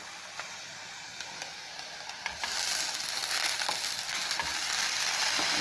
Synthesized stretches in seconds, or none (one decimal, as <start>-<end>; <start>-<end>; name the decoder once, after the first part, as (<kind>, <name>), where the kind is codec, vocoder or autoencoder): none